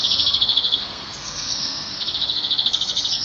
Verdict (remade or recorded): remade